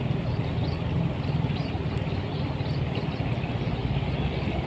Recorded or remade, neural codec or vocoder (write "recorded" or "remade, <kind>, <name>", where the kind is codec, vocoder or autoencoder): recorded